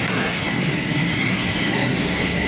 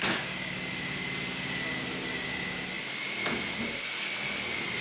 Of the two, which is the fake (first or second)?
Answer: first